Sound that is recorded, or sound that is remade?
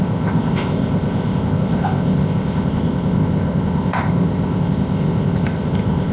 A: remade